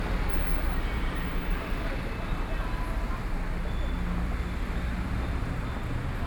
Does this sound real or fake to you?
real